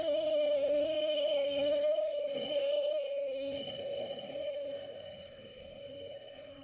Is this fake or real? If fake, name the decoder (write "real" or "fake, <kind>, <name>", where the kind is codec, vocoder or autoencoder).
fake, codec, SNAC